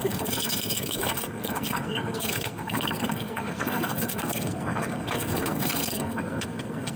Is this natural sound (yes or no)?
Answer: no